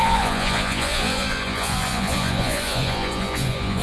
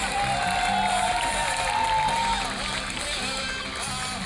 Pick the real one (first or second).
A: second